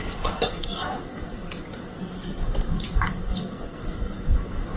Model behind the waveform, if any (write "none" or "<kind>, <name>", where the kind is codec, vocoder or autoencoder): codec, SNAC